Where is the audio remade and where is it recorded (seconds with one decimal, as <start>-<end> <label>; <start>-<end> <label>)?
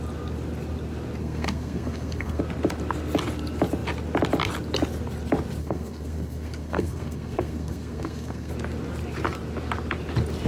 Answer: 0.0-1.2 recorded; 1.2-2.4 remade; 2.4-5.6 recorded; 5.6-8.5 remade; 8.5-10.5 recorded